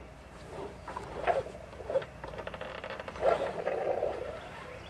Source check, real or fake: fake